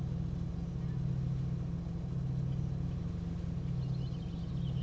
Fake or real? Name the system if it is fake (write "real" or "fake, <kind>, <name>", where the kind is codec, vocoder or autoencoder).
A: real